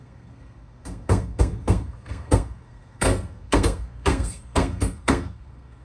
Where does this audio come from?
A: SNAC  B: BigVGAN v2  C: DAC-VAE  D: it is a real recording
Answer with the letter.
A